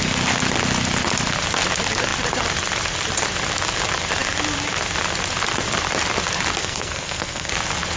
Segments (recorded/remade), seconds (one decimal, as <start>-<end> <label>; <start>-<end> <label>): 0.0-6.6 recorded; 6.6-7.5 remade; 7.5-8.0 recorded